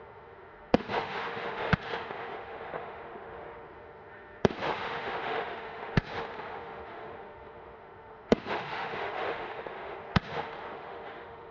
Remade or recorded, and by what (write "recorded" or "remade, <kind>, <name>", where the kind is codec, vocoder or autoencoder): remade, autoencoder, DAC-VAE